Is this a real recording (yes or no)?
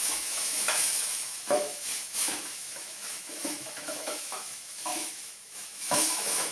no